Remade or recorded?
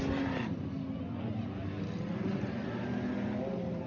recorded